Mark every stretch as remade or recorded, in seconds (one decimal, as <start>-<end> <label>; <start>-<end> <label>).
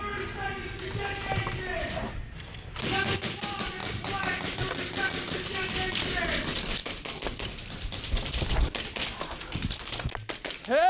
0.0-3.8 recorded; 3.8-4.6 remade; 4.6-6.8 recorded; 6.8-9.9 remade; 9.9-10.9 recorded